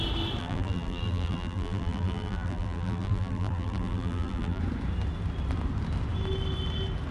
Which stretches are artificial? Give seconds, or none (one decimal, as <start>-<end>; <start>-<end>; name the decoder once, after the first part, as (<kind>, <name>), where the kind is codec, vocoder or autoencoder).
0.4-4.6 (vocoder, BigVGAN v2)